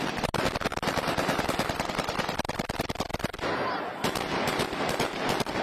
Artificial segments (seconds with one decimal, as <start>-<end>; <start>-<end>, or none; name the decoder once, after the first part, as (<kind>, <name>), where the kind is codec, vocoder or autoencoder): 0.7-1.9 (vocoder, BigVGAN v2)